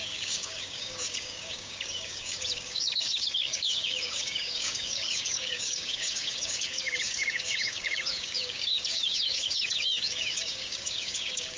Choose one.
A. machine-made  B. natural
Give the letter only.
A